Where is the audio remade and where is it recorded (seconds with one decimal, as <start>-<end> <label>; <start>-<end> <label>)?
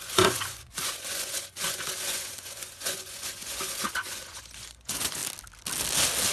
0.0-5.2 remade; 5.2-6.3 recorded